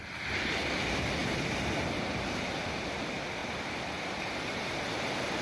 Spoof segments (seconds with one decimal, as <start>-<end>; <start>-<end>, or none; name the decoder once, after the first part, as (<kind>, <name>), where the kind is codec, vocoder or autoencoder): none